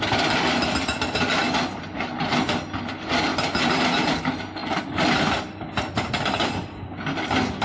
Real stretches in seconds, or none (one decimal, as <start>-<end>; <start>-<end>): 0.0-7.6